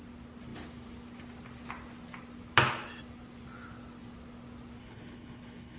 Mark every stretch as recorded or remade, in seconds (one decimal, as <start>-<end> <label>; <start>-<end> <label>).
0.0-4.8 recorded; 4.8-5.8 remade